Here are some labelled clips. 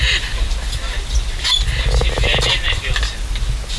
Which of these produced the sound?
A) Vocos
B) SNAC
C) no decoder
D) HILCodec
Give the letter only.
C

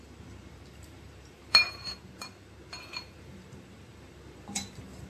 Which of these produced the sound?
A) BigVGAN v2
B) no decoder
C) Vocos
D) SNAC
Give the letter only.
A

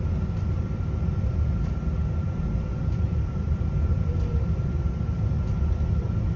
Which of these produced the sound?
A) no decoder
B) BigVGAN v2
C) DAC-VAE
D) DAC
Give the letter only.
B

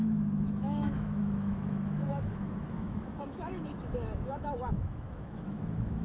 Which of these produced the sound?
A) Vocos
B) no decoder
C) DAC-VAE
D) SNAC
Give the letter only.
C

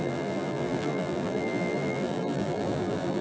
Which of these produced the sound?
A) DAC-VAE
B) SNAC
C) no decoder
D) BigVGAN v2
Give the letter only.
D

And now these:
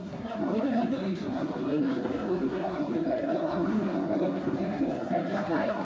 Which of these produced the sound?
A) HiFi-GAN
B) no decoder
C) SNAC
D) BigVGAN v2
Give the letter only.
C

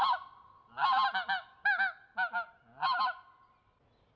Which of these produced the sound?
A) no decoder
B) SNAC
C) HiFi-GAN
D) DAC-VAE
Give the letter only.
A